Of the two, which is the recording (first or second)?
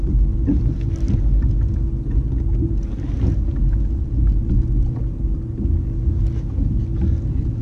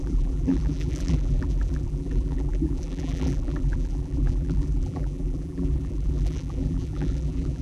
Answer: first